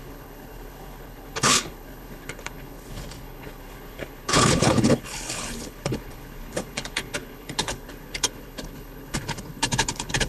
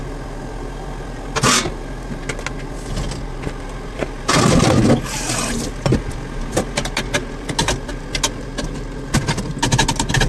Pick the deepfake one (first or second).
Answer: first